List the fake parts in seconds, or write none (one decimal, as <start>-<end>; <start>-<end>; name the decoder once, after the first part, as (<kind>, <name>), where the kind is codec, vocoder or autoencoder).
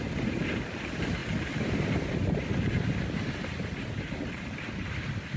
none